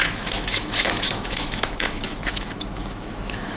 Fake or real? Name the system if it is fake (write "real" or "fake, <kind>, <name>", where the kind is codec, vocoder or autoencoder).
fake, autoencoder, DAC-VAE